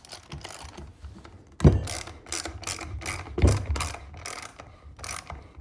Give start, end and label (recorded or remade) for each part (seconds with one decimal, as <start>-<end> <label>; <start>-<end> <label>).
0.0-4.5 recorded; 4.5-5.6 remade